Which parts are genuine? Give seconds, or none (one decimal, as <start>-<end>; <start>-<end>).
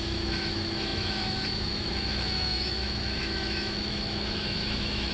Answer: none